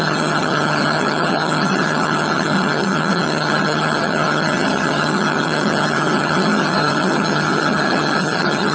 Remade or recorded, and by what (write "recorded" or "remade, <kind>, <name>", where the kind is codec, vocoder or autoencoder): remade, vocoder, HiFi-GAN